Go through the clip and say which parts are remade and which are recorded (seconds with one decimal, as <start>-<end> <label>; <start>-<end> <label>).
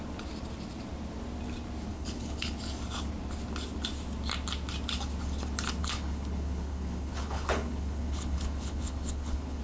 0.0-1.9 recorded; 1.9-2.6 remade; 2.6-5.8 recorded; 5.8-9.6 remade